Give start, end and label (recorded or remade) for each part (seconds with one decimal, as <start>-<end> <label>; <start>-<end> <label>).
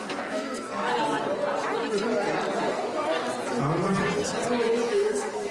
0.0-0.9 remade; 0.9-2.6 recorded; 2.6-3.2 remade; 3.2-4.9 recorded; 4.9-5.5 remade